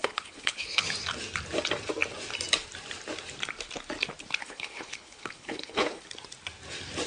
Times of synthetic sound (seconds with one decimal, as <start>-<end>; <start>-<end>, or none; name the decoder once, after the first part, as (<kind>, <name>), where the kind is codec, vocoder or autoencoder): 0.0-0.8 (codec, HILCodec); 4.4-6.0